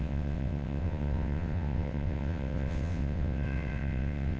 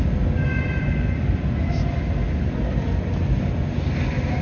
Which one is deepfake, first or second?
first